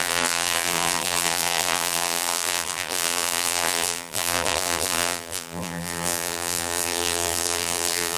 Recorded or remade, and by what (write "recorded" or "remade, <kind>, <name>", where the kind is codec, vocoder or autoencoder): remade, vocoder, BigVGAN v2